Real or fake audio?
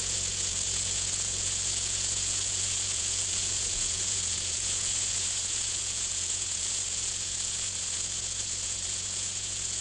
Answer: fake